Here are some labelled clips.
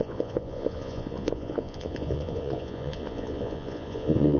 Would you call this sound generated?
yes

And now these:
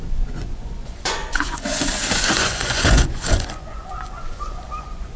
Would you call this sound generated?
yes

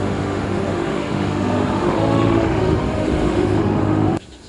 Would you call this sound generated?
yes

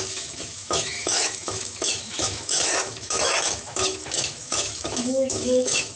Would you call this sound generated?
yes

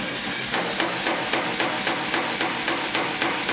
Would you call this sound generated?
no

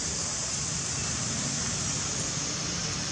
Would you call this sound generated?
no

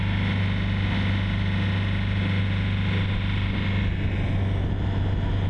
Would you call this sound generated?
no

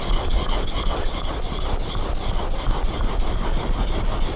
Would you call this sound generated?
no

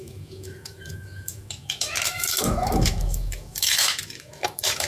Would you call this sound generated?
yes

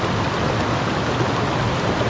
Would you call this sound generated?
no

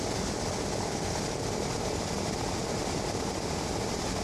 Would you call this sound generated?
no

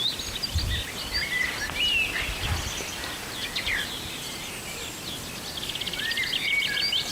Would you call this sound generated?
no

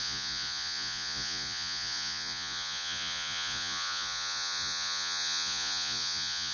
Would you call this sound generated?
yes